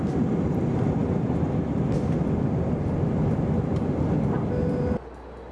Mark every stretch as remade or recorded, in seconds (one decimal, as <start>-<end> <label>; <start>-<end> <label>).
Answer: 0.0-5.5 recorded